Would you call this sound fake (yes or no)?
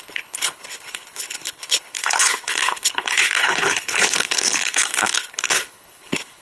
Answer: yes